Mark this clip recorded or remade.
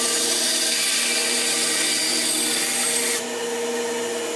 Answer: recorded